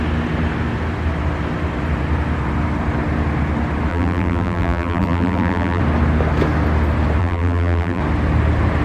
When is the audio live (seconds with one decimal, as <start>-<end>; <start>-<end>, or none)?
0.0-3.9; 5.8-7.2; 8.0-8.8